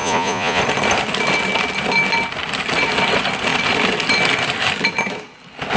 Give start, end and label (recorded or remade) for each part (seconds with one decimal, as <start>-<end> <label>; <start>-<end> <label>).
0.0-0.6 remade; 0.6-5.8 recorded